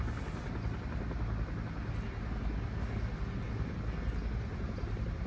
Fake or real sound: real